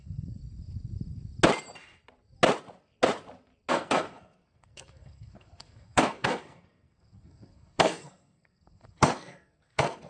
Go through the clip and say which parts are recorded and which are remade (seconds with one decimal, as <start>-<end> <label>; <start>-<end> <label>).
0.0-0.4 remade; 0.4-3.7 recorded; 3.7-10.1 remade